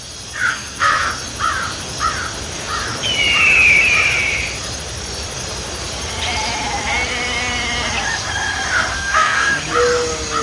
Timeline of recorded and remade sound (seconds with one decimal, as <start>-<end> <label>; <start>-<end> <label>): 0.0-0.5 recorded; 0.5-1.1 remade; 1.1-8.9 recorded; 8.9-9.6 remade; 9.6-10.4 recorded